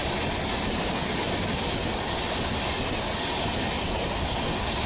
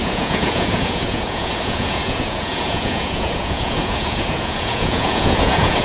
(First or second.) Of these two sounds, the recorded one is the first